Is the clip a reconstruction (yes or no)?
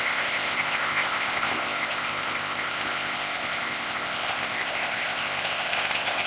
yes